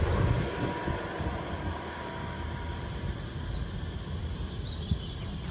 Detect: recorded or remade recorded